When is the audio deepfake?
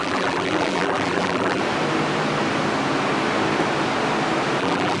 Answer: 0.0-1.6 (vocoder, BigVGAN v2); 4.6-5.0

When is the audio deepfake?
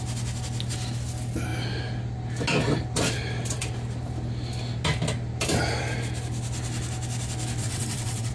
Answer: 7.6-8.3 (vocoder, WaveNeXt)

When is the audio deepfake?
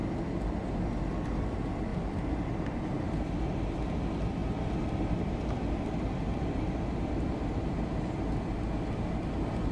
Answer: 1.9-2.8 (vocoder, BigVGAN v2)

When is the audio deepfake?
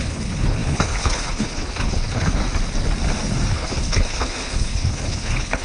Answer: 0.0-2.4 (codec, HILCodec); 3.5-5.6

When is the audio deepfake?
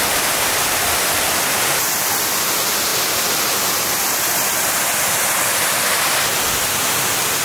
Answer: none